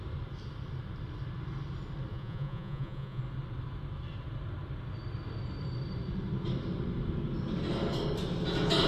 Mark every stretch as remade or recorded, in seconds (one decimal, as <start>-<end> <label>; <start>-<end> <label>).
0.0-2.1 recorded; 2.1-3.2 remade; 3.2-8.9 recorded